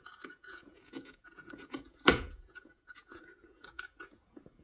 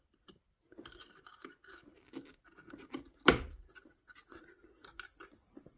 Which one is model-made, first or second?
first